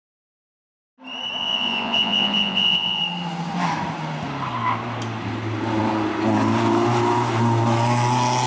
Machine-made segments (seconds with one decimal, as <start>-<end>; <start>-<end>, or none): 1.4-3.0